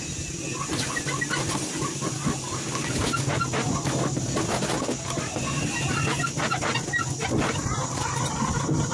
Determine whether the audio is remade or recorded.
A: recorded